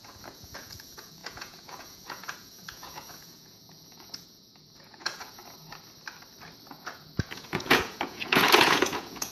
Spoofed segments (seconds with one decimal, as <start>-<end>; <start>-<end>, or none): 0.0-5.4; 6.7-9.3